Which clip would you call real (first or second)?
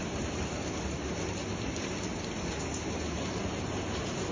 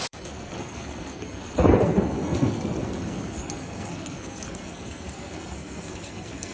first